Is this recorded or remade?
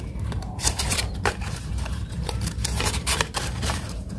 remade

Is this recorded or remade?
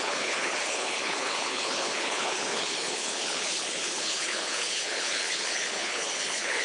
remade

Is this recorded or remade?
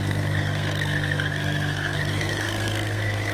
remade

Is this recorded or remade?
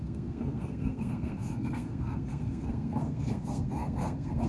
remade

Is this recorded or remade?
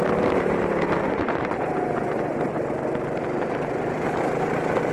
recorded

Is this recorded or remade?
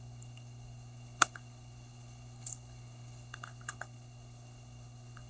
remade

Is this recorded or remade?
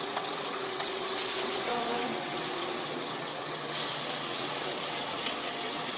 remade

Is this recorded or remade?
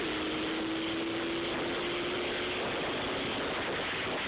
recorded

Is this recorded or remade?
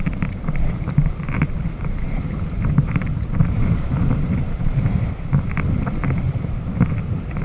remade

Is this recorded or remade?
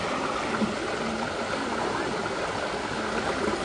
recorded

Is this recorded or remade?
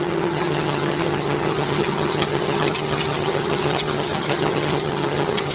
remade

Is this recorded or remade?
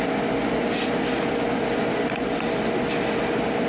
recorded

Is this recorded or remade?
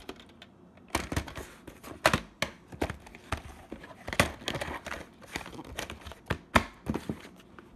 recorded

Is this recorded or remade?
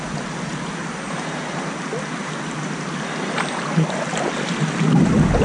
recorded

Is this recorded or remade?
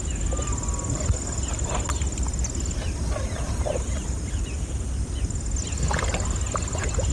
recorded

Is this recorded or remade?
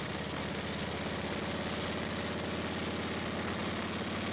recorded